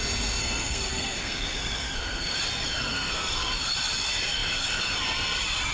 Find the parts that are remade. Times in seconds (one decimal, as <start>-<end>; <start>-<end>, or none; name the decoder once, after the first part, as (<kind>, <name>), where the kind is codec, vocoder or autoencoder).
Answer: 0.4-2.4 (codec, SNAC); 2.9-3.5

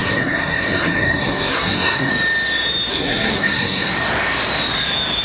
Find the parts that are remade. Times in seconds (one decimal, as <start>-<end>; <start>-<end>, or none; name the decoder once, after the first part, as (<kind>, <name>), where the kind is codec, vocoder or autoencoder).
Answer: 0.0-2.1 (codec, SNAC); 2.9-3.9

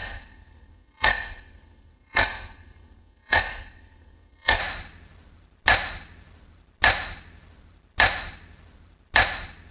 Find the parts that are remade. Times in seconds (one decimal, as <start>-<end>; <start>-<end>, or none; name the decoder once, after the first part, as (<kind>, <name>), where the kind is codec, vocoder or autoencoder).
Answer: 0.0-4.6 (codec, SNAC)

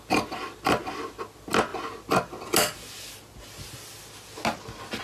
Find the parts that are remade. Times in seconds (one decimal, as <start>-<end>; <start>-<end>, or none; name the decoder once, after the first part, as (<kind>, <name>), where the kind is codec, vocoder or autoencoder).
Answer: none

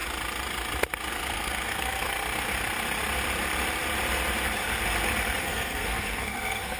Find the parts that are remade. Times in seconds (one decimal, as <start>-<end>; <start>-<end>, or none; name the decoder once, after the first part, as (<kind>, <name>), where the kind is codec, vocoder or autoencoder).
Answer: 1.1-2.1 (codec, SNAC); 5.4-6.8